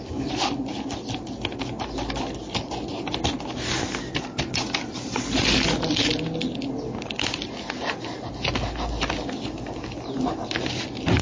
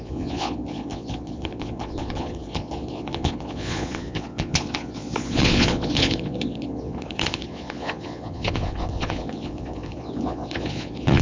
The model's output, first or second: second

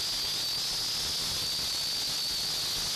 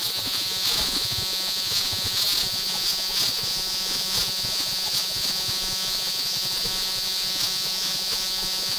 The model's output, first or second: second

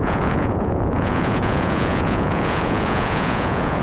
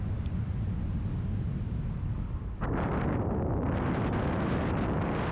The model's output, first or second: first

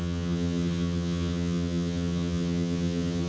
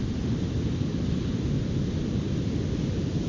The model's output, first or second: first